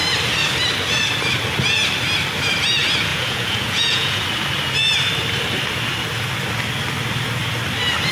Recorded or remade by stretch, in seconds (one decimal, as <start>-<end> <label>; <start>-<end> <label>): 0.0-3.1 recorded; 3.1-4.2 remade; 4.2-8.1 recorded